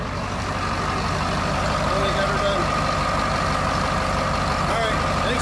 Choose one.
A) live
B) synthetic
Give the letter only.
A